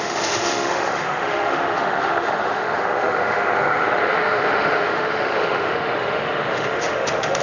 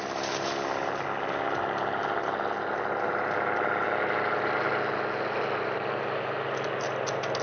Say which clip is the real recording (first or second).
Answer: second